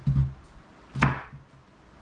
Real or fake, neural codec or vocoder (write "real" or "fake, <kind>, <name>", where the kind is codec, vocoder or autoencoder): real